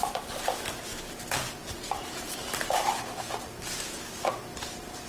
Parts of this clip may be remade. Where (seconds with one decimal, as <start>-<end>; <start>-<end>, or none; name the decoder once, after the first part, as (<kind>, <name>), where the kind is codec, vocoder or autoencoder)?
0.0-2.9 (vocoder, BigVGAN v2)